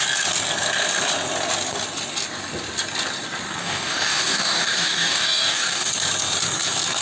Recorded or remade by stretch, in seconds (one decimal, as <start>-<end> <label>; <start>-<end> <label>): 0.0-3.6 recorded; 3.6-5.9 remade; 5.9-7.0 recorded